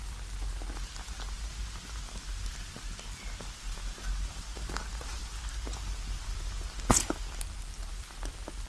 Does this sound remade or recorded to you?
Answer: recorded